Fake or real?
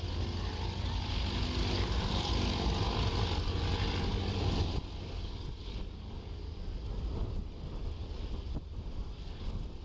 real